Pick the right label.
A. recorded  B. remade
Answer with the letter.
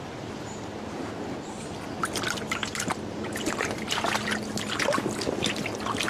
A